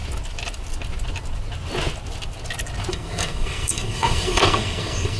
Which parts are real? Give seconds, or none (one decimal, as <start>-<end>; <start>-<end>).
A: 0.0-2.9